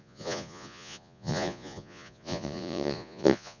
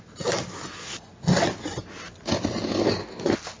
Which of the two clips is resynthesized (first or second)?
first